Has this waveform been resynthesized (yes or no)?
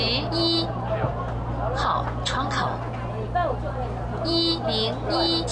no